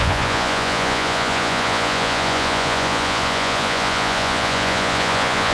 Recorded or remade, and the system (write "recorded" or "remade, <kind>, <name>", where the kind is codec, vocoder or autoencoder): remade, vocoder, Vocos